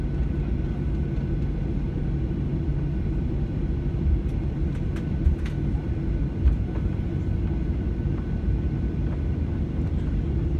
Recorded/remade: recorded